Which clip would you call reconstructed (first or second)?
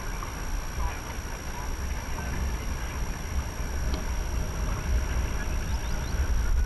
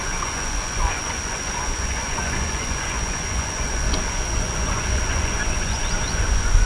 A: second